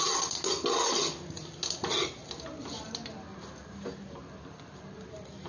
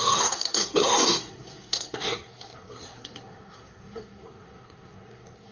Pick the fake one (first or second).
second